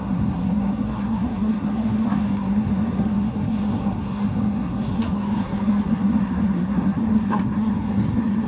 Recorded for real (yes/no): no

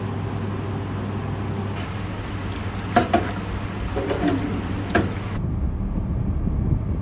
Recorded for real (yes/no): yes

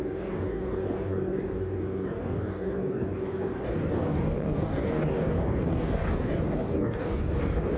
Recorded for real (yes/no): no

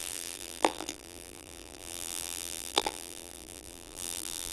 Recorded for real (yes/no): no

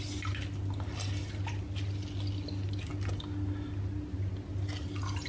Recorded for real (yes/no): yes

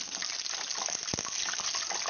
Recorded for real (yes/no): yes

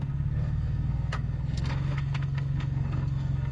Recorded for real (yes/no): no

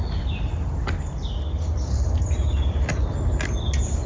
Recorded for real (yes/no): yes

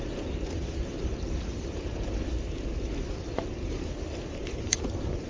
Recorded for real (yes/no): no